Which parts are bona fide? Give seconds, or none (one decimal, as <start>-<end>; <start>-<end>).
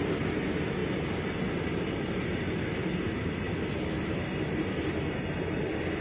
0.0-6.0